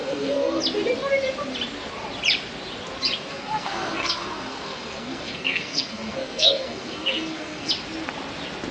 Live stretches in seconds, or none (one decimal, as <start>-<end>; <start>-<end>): 0.6-3.3; 7.7-8.7